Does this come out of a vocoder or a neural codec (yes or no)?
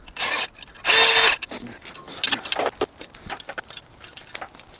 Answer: no